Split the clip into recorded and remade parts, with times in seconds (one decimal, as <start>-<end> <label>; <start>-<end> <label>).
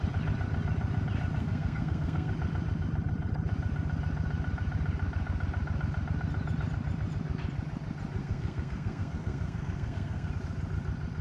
0.0-1.4 recorded; 1.4-2.3 remade; 2.3-8.2 recorded; 8.2-10.3 remade; 10.3-11.2 recorded